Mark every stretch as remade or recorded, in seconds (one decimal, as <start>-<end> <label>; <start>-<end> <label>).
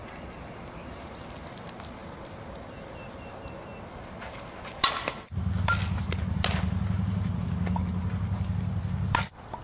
0.0-9.6 recorded